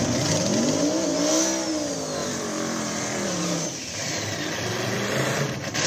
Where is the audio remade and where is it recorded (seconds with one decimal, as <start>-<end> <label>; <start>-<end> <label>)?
0.0-2.2 recorded; 2.2-5.9 remade

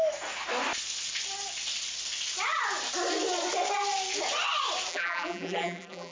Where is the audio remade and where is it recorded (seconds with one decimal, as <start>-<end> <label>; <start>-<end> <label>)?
0.0-4.9 recorded; 4.9-6.1 remade

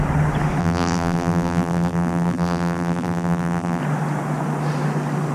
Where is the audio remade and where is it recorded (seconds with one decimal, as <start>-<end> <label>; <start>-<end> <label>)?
0.0-0.6 recorded; 0.6-3.8 remade; 3.8-5.3 recorded

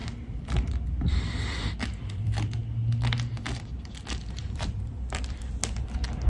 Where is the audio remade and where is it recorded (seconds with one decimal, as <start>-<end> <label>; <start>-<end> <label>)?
0.0-2.6 remade; 2.6-4.3 recorded; 4.3-5.6 remade; 5.6-6.3 recorded